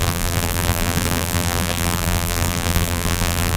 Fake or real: fake